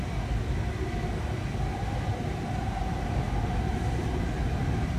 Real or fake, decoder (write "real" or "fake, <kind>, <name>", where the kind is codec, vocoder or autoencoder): real